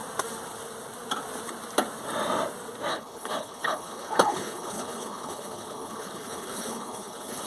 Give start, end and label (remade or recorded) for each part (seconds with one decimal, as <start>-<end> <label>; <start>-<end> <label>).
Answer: 0.0-2.9 recorded; 2.9-7.5 remade